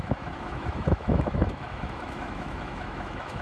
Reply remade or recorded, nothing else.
remade